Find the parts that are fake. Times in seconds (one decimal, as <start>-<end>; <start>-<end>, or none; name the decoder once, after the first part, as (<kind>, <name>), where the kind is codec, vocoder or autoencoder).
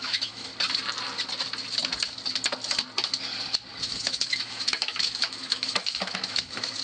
0.0-0.5 (autoencoder, DAC-VAE); 3.8-6.8